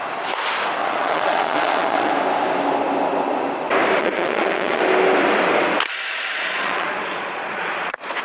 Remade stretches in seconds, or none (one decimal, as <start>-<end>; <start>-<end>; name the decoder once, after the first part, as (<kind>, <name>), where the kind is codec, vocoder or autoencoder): 0.8-2.1 (vocoder, Vocos); 4.0-4.8; 6.3-8.2